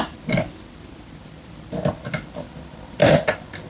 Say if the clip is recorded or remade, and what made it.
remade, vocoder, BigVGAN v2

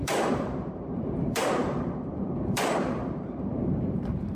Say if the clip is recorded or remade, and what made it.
remade, vocoder, BigVGAN v2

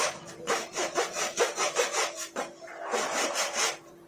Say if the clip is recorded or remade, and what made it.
remade, vocoder, BigVGAN v2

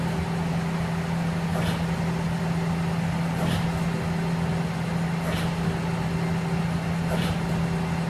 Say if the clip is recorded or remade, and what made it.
recorded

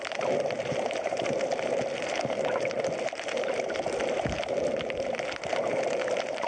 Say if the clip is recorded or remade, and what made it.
remade, vocoder, BigVGAN v2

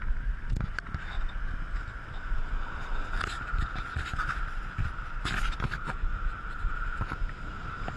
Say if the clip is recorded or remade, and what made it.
recorded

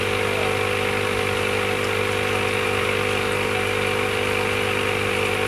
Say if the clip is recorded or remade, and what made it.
recorded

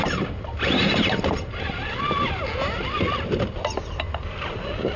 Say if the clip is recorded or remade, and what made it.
recorded